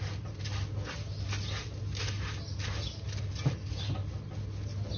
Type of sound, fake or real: real